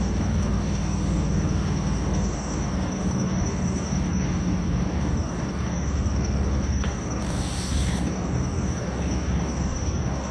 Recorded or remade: remade